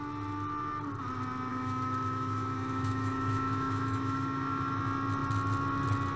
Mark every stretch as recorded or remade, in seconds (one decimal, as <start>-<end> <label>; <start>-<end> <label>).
0.0-1.5 recorded; 1.5-4.8 remade; 4.8-6.2 recorded